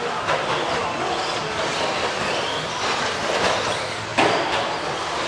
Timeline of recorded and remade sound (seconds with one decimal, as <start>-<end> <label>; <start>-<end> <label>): 0.0-4.1 recorded; 4.1-5.3 remade